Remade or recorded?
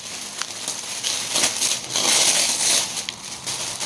recorded